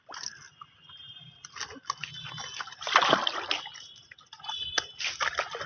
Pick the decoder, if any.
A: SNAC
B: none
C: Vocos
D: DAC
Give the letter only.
B